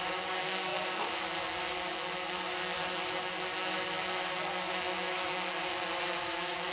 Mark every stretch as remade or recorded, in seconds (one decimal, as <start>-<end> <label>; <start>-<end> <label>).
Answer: 0.0-6.7 remade